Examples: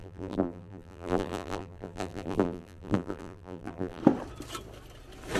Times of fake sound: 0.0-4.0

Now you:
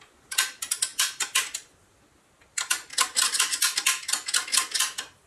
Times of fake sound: none